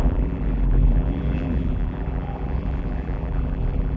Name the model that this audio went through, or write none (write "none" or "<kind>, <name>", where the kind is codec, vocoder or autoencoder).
vocoder, BigVGAN v2